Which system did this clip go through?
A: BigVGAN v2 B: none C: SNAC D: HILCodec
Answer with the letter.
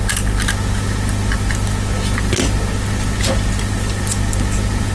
B